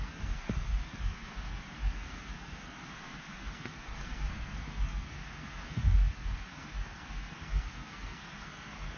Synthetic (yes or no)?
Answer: yes